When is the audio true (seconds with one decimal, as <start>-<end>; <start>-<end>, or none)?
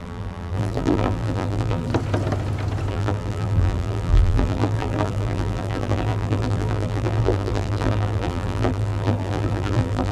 1.9-2.9